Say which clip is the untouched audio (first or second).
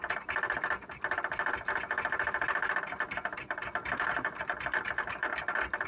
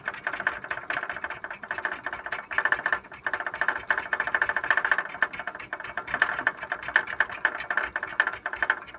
second